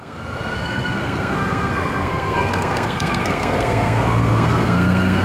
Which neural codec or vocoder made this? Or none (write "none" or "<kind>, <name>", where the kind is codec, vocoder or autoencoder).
codec, SNAC